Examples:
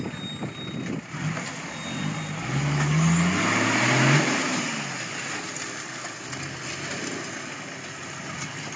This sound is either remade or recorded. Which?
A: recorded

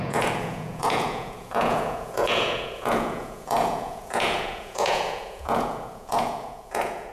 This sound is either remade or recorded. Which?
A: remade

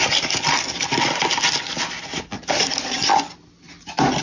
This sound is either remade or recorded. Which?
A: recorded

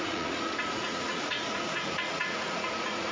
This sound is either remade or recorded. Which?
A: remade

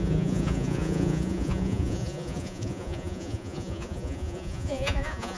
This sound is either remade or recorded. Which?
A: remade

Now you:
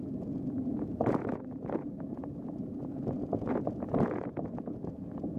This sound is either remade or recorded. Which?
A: remade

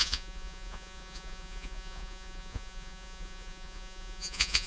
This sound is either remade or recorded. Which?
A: remade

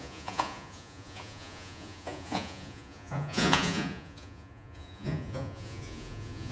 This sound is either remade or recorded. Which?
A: remade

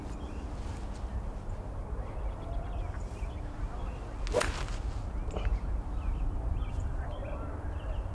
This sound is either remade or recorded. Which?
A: recorded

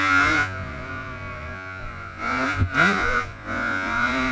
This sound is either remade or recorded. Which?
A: remade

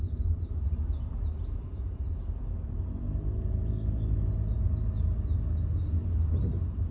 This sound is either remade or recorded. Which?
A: recorded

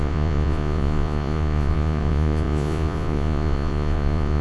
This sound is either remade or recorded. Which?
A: remade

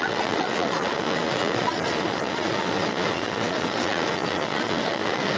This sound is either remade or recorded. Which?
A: remade